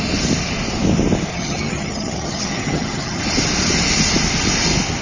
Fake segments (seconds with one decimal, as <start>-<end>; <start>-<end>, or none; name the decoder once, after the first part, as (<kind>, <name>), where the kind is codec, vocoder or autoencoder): 1.3-3.2 (vocoder, HiFi-GAN)